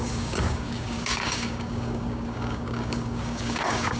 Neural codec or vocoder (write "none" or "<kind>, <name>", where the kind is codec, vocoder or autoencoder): codec, DAC